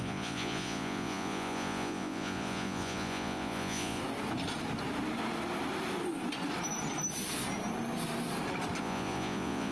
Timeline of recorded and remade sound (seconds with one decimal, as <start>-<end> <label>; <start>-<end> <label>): 0.0-4.0 remade; 4.0-8.8 recorded; 8.8-9.7 remade